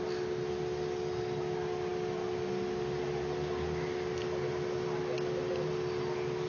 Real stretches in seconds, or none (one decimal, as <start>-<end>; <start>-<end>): 0.0-6.5